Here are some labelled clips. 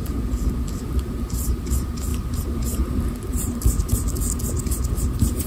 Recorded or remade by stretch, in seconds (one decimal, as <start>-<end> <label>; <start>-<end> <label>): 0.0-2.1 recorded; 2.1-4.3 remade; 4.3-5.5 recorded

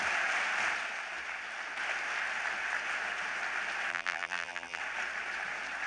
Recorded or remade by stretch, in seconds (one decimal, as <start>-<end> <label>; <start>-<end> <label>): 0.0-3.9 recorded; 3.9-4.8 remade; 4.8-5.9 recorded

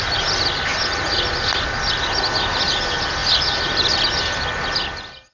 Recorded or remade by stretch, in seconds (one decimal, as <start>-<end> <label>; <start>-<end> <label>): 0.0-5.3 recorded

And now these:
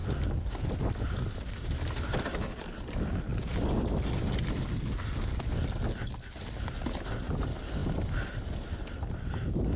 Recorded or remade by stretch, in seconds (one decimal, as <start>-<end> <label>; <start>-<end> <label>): 0.0-0.6 recorded; 0.6-3.3 remade; 3.3-6.4 recorded; 6.4-9.8 remade